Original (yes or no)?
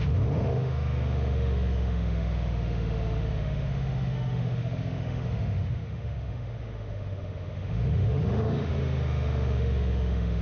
no